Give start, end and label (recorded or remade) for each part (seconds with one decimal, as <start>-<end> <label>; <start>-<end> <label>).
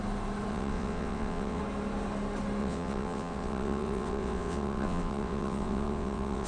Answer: 0.0-0.5 recorded; 0.5-1.6 remade; 1.6-2.6 recorded; 2.6-6.5 remade